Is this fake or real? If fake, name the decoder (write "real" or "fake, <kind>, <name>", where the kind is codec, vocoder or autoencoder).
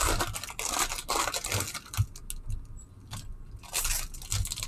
real